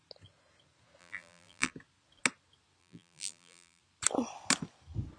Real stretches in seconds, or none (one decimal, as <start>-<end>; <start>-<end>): 0.0-1.0; 1.7-2.8; 3.8-5.2

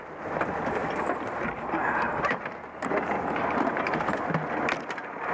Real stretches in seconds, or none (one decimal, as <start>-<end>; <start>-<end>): 0.0-5.3

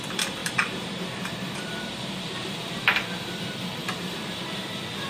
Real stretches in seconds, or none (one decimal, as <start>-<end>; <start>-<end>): 0.0-0.4; 2.7-3.8; 4.6-5.1

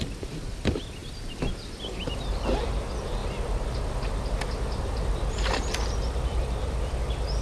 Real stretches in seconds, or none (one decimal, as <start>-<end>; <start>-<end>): 0.0-7.4

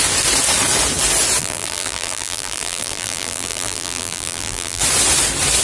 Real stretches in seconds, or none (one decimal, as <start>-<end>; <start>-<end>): 0.0-1.4; 4.8-5.6